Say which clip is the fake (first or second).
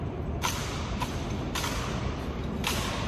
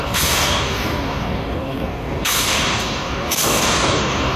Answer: second